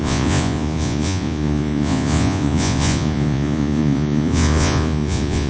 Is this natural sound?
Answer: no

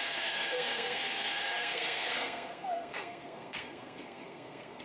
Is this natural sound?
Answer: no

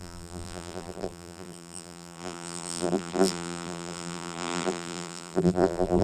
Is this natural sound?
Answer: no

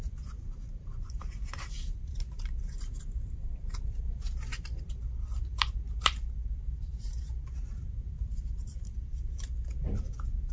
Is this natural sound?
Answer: no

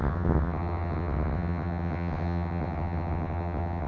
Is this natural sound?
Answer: no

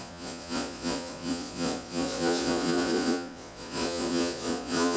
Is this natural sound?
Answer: no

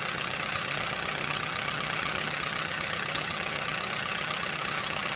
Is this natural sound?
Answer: no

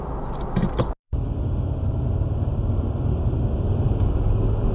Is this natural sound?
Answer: yes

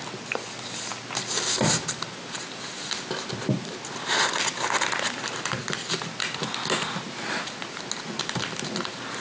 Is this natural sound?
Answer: yes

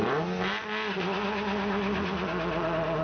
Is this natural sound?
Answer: yes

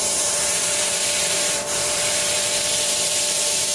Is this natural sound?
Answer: no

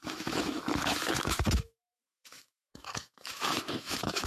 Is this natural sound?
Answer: no